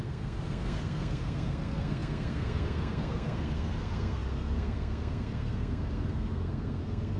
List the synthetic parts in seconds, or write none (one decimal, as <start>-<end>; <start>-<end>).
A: 0.0-7.2